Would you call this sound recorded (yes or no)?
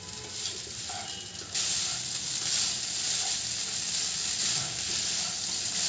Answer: yes